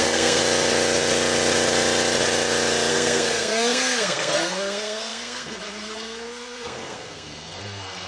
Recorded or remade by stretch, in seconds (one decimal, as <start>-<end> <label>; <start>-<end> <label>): 0.0-0.4 remade; 0.4-2.9 recorded; 2.9-8.1 remade